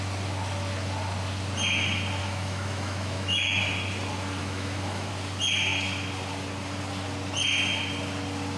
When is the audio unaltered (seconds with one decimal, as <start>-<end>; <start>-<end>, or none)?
0.0-2.2; 3.6-4.4; 5.1-8.6